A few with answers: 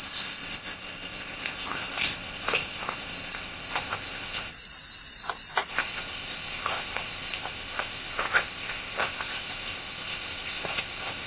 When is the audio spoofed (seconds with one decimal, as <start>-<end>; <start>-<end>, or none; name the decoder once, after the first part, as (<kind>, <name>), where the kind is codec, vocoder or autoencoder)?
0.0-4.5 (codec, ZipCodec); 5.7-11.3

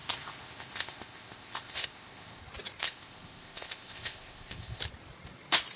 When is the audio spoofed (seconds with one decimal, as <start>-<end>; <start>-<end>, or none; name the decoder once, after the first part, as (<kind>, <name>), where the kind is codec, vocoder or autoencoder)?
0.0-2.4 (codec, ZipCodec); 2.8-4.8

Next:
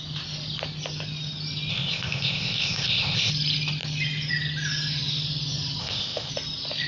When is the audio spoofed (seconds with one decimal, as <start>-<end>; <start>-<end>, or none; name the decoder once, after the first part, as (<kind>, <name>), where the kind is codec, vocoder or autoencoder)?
1.7-3.3 (codec, ZipCodec); 5.8-6.3

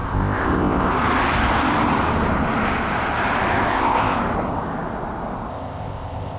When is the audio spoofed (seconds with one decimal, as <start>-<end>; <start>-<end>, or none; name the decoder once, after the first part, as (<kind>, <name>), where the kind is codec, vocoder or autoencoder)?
0.0-0.9 (codec, ZipCodec); 3.7-4.2; 5.5-6.4

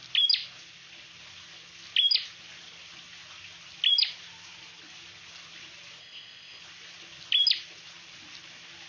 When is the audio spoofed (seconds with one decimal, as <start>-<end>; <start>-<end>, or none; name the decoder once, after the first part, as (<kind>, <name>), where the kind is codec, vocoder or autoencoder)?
6.0-6.6 (codec, ZipCodec)

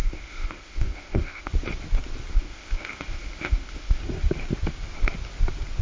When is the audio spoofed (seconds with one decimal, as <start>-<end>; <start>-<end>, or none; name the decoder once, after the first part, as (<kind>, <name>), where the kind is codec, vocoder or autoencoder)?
0.0-1.5 (codec, ZipCodec); 2.3-4.0

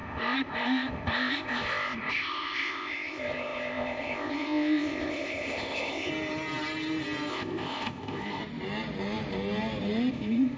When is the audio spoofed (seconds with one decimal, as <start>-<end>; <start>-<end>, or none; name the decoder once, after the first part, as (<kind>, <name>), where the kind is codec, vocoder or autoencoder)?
0.0-6.1 (codec, ZipCodec); 7.3-8.4; 10.1-10.6